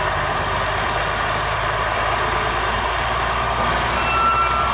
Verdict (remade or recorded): recorded